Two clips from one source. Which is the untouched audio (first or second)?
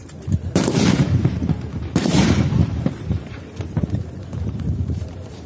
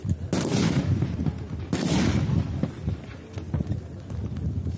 second